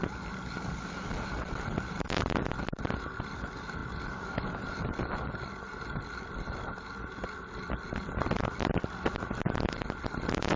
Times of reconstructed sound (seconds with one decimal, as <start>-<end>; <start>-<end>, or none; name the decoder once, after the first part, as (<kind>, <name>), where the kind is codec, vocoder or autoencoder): none